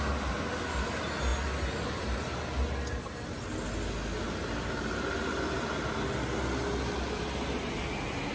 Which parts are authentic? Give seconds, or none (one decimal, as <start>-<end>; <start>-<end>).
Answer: 0.0-8.3